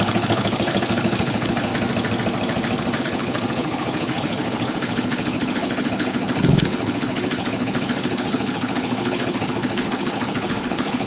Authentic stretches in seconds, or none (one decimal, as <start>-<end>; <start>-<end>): 1.7-3.0